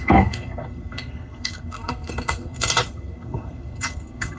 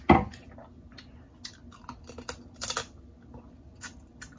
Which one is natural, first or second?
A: second